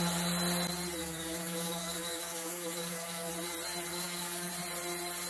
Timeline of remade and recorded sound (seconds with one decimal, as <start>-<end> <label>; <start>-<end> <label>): 0.0-1.0 recorded; 1.0-3.3 remade; 3.3-3.9 recorded; 3.9-4.5 remade; 4.5-5.3 recorded